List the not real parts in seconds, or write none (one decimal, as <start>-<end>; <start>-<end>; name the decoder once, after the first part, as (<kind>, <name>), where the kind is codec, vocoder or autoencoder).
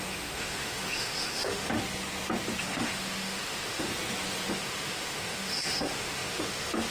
0.0-1.8 (autoencoder, DAC-VAE); 2.6-3.9; 4.5-6.9